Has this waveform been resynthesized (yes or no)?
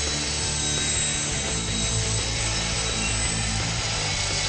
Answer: no